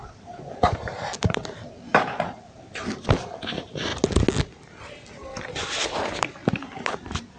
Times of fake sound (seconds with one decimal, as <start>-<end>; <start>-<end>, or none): 0.0-3.9; 6.5-7.4